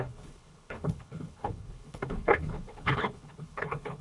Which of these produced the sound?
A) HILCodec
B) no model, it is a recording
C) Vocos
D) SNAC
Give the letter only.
A